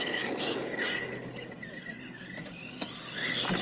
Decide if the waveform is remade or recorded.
recorded